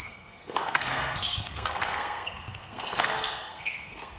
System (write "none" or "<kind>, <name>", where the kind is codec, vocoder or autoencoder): codec, SNAC